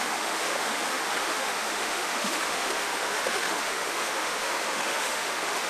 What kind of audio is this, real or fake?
fake